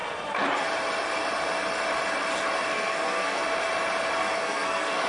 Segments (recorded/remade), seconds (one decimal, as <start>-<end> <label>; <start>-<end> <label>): 0.0-2.7 recorded; 2.7-3.4 remade; 3.4-4.2 recorded; 4.2-5.1 remade